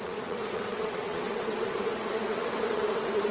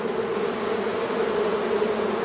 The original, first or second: second